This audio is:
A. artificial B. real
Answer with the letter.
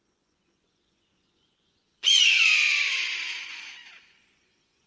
A